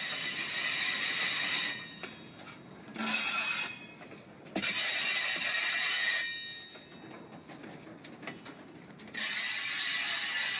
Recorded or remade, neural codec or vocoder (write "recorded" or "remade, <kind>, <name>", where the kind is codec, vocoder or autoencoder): recorded